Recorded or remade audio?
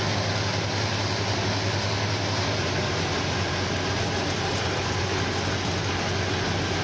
recorded